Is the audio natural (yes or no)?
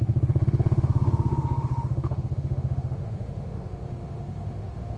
no